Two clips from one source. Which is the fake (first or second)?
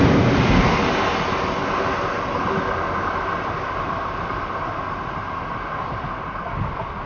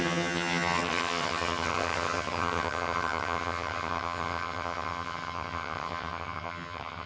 second